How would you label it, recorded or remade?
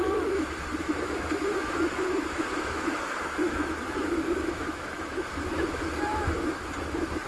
remade